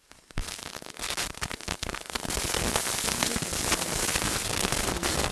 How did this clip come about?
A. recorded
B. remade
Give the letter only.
B